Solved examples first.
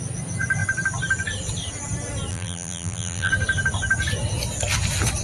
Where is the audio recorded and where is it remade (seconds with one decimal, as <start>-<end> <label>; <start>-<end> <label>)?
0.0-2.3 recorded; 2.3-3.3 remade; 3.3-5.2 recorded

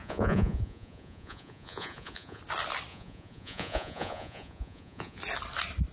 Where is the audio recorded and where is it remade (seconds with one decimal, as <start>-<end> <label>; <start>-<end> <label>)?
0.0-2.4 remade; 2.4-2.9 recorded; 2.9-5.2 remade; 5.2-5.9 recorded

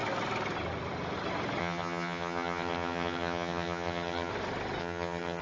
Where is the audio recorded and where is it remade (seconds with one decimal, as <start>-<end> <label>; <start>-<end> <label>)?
0.0-1.6 recorded; 1.6-4.3 remade; 4.3-4.8 recorded; 4.8-5.4 remade